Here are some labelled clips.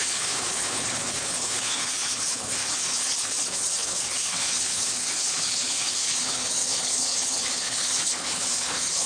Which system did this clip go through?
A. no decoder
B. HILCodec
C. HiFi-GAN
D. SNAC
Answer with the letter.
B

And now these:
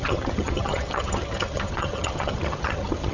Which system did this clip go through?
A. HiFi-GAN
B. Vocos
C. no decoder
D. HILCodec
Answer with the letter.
A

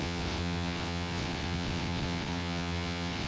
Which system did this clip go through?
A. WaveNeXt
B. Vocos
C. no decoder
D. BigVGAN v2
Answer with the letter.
A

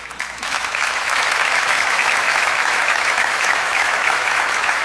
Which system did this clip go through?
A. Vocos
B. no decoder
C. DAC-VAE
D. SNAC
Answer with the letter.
C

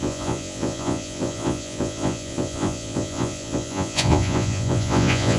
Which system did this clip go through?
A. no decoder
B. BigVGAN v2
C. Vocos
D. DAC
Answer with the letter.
C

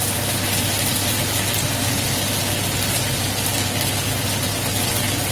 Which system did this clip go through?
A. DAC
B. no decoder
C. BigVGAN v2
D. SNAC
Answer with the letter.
B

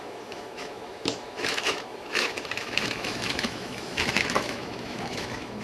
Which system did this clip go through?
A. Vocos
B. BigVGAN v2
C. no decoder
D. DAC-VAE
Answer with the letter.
D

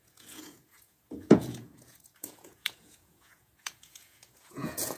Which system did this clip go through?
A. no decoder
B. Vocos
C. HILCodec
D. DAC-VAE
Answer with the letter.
B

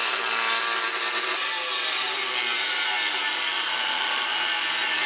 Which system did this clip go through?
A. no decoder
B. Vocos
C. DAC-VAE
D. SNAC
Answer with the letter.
A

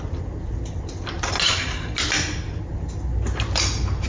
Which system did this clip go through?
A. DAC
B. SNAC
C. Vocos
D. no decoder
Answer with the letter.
D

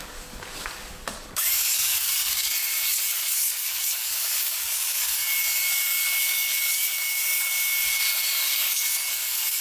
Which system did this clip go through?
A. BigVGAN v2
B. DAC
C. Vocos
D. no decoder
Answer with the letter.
B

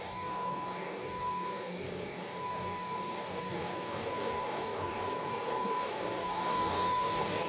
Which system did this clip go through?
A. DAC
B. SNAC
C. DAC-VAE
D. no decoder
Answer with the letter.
A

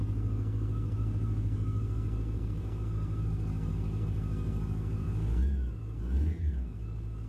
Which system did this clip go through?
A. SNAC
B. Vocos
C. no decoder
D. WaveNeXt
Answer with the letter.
A